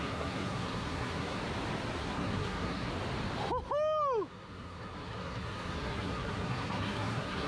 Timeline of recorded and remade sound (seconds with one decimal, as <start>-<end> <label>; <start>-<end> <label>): 0.0-1.4 remade; 1.4-2.0 recorded; 2.0-2.9 remade; 2.9-4.3 recorded; 4.3-7.5 remade